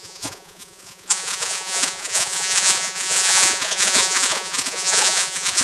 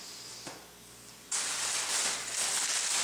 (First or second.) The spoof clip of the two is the first